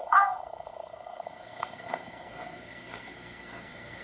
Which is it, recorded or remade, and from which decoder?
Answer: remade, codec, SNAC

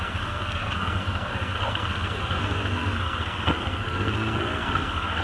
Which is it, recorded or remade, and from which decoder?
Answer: remade, codec, SNAC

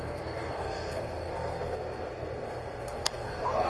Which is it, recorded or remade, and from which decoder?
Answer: remade, codec, SNAC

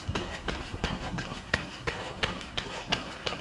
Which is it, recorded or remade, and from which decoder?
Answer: remade, codec, SNAC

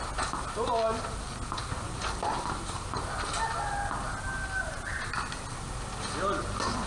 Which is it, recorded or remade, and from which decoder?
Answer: recorded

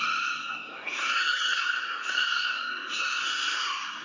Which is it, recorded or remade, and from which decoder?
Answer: remade, codec, SNAC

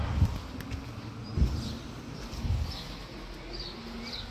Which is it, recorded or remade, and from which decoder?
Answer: recorded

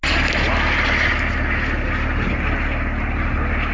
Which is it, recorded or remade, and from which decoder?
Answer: recorded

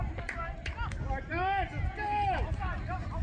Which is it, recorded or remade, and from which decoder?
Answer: recorded